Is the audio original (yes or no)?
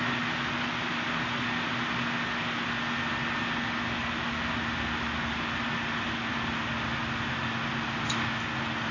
yes